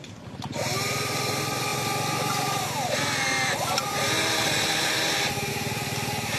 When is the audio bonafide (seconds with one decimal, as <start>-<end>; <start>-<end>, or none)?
0.0-6.4